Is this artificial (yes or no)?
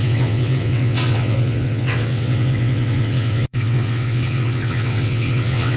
yes